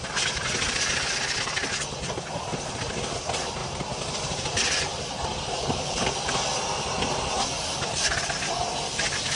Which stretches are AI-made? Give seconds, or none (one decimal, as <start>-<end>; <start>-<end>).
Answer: 5.6-6.1